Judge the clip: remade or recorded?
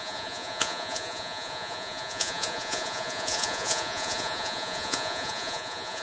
remade